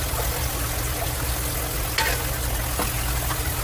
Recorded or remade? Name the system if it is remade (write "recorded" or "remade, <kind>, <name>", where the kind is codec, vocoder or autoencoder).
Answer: recorded